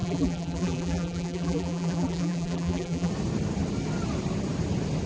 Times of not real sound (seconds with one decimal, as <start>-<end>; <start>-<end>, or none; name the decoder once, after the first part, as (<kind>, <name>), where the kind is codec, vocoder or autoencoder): 0.0-3.1 (vocoder, BigVGAN v2)